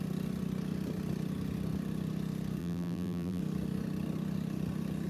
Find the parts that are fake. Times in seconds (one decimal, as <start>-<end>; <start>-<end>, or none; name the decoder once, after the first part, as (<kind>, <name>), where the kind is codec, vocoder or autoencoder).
2.6-3.4 (vocoder, BigVGAN v2)